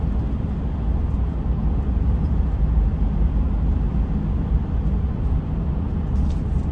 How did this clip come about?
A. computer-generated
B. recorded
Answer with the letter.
B